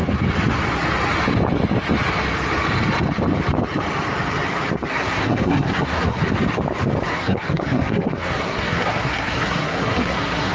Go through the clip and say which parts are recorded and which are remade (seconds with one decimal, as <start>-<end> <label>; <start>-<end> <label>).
0.0-4.9 recorded; 4.9-6.2 remade; 6.2-7.1 recorded; 7.1-10.5 remade